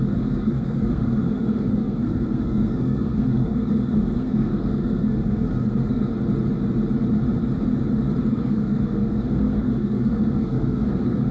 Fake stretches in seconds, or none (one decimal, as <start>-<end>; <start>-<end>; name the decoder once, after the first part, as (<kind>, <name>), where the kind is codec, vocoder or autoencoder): 0.0-6.1 (codec, SNAC); 8.3-11.3